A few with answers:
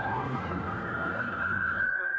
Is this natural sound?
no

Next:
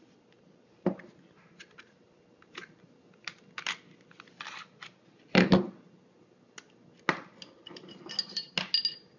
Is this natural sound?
yes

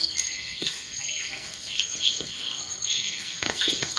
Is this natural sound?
no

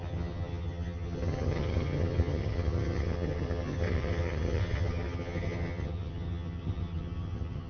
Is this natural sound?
no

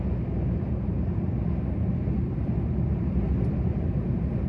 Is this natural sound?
yes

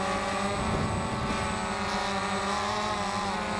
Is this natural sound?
yes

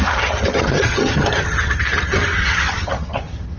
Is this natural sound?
no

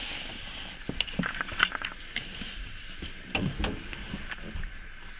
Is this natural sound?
yes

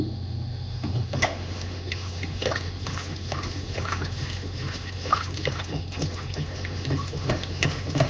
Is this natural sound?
no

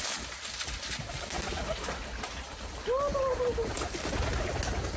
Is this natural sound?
yes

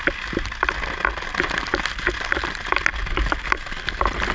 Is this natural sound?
yes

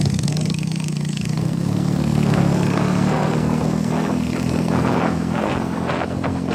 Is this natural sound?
no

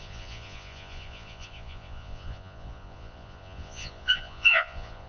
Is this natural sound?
no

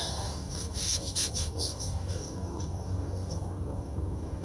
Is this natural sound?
no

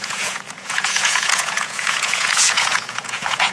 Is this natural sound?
no